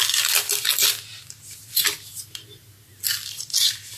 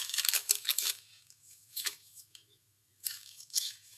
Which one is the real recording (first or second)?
first